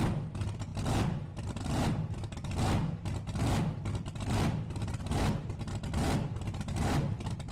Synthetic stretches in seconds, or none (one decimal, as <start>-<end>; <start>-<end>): none